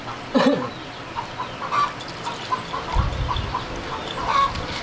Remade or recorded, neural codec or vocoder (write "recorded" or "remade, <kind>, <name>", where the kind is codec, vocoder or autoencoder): recorded